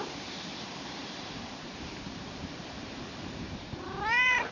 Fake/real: fake